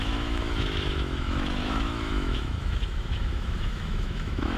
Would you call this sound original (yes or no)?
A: no